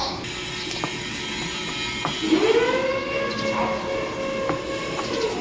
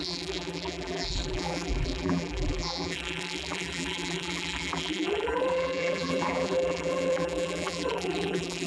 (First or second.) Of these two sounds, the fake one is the second